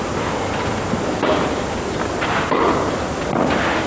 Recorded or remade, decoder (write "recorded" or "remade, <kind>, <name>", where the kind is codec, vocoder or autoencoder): recorded